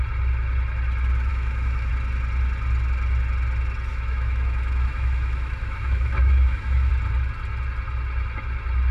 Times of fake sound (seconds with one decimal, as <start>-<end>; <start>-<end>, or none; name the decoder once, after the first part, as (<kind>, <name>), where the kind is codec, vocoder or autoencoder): 1.3-1.9 (autoencoder, DAC-VAE); 3.9-6.9